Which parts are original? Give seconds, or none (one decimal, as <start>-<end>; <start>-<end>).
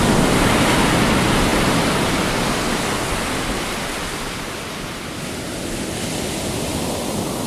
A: 0.0-7.5